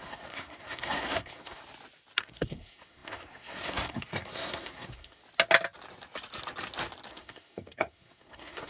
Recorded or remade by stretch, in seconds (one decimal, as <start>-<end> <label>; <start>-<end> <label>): 0.0-1.6 remade; 1.6-2.2 recorded; 2.2-5.2 remade; 5.2-7.1 recorded; 7.1-8.7 remade